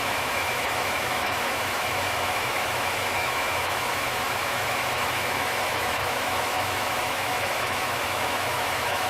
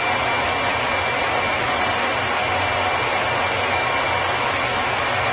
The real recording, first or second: second